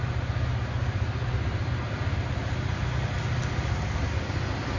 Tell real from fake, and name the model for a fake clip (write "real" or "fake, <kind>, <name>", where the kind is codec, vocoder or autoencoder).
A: real